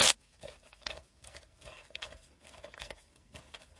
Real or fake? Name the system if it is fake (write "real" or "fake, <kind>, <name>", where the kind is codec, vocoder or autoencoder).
fake, codec, SNAC